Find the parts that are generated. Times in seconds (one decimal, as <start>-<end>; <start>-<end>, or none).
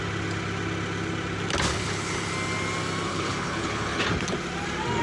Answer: 1.7-2.3; 3.1-4.0